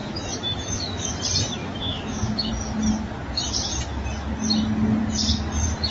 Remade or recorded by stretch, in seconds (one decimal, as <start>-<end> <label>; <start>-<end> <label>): 0.0-1.2 remade; 1.2-1.6 recorded; 1.6-2.5 remade; 2.5-5.9 recorded